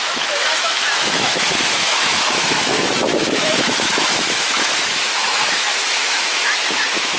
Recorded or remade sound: remade